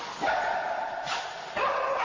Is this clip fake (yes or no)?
no